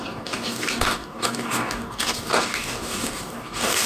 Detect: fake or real fake